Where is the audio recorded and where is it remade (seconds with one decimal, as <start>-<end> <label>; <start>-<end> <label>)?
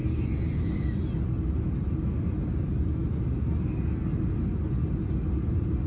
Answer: 0.0-5.9 recorded